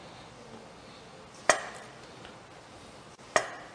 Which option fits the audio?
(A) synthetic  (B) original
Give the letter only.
B